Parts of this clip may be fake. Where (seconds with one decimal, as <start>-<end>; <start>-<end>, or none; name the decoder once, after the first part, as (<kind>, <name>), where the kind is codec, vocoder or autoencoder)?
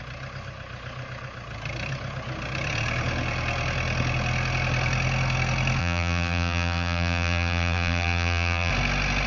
5.8-8.7 (vocoder, BigVGAN v2)